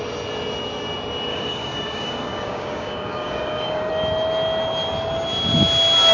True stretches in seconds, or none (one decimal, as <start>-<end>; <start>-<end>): 0.0-1.3; 3.9-6.1